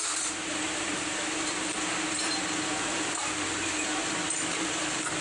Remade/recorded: recorded